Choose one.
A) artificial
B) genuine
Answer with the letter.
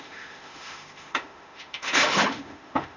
A